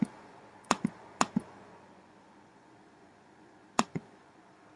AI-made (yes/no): yes